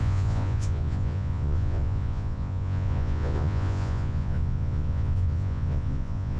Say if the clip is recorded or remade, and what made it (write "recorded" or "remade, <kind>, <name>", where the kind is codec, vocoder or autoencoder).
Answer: remade, vocoder, Vocos